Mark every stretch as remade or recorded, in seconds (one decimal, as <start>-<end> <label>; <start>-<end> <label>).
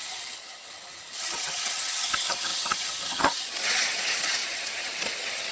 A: 0.0-5.5 remade